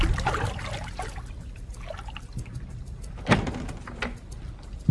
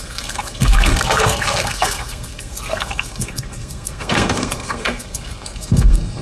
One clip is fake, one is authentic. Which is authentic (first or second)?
first